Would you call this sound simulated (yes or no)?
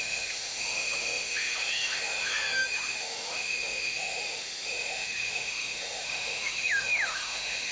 yes